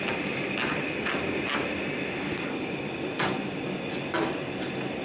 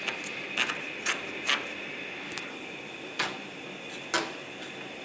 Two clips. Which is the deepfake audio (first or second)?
first